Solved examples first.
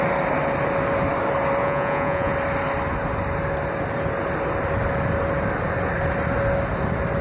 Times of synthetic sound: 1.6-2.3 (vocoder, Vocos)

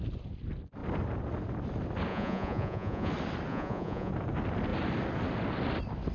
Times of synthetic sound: 2.1-3.1 (vocoder, Vocos); 3.5-4.1